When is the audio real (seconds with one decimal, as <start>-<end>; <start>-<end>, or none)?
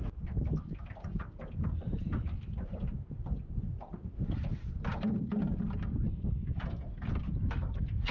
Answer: 0.0-8.1